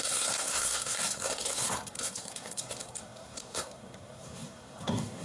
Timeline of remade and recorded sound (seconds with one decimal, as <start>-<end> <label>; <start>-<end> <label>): 0.0-5.2 remade